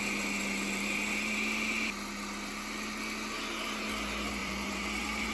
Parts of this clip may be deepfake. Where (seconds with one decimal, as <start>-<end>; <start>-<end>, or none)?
4.4-5.3